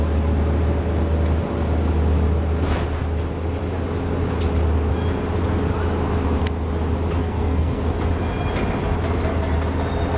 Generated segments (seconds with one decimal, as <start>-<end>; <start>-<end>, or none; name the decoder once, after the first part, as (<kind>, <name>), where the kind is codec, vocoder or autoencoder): 7.2-7.8 (codec, SNAC)